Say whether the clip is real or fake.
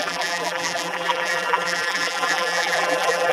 fake